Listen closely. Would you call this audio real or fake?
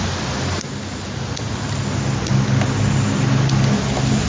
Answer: real